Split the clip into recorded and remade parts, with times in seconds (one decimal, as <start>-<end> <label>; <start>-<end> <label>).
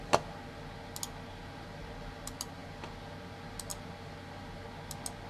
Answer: 0.0-5.3 recorded